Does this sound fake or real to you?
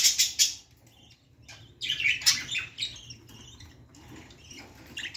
real